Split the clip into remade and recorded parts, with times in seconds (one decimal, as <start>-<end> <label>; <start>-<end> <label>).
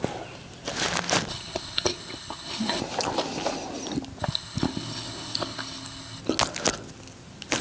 0.0-1.3 recorded; 1.3-2.8 remade; 2.8-4.2 recorded; 4.2-6.2 remade; 6.2-7.6 recorded